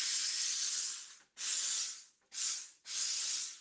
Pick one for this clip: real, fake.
real